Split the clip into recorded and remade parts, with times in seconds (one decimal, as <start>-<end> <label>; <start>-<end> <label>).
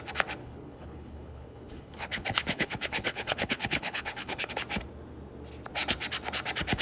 0.0-0.4 recorded; 0.4-4.5 remade; 4.5-6.8 recorded